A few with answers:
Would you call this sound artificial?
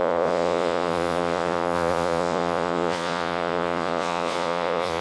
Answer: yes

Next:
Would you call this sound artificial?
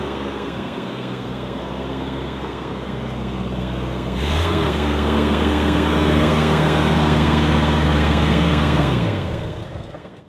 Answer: yes